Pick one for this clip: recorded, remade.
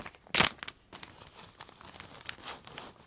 recorded